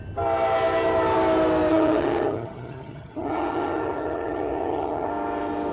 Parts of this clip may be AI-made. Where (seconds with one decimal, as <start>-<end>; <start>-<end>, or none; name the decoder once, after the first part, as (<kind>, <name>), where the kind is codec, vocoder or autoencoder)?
1.7-5.1 (vocoder, HiFi-GAN)